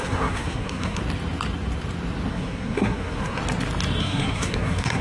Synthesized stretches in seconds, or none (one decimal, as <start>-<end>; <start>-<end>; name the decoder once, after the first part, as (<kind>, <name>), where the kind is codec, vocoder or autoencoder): 0.0-1.0 (codec, SNAC); 2.3-3.4; 4.0-5.0